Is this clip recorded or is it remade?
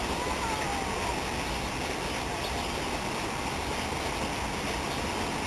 recorded